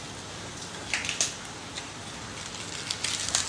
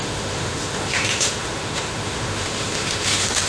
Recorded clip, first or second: first